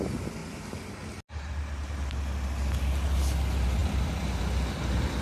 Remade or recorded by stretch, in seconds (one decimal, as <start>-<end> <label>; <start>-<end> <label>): 0.0-0.4 recorded; 0.4-1.0 remade; 1.0-3.8 recorded; 3.8-4.4 remade; 4.4-5.2 recorded